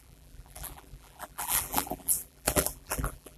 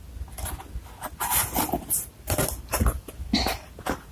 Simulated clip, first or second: first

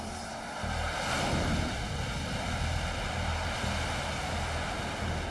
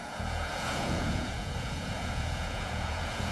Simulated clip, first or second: second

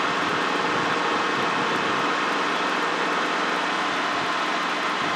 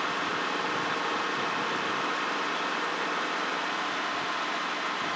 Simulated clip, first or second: second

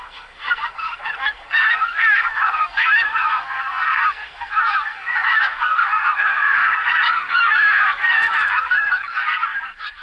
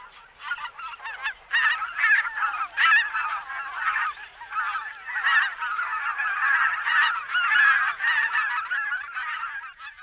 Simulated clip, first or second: first